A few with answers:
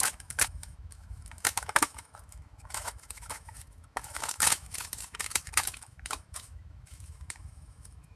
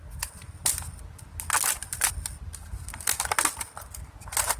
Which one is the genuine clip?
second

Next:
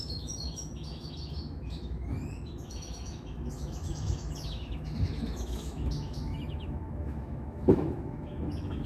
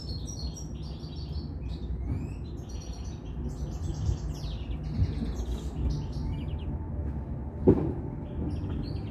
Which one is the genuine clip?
second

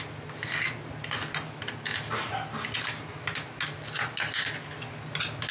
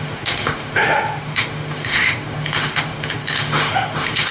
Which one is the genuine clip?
first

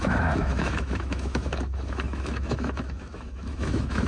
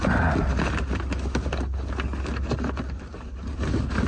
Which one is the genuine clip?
second